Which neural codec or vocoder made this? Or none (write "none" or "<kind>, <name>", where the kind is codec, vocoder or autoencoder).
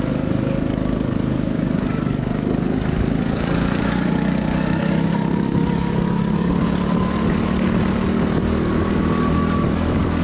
codec, DAC